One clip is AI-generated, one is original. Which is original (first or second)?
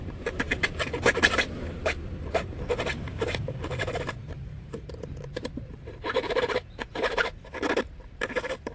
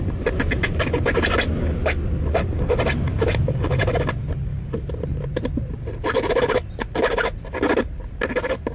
second